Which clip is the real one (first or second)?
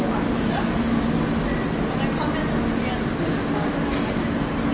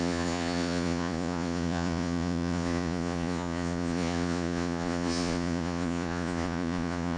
first